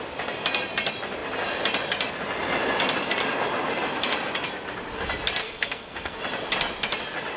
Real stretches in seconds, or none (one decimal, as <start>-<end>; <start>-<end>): 0.0-5.4; 6.2-7.4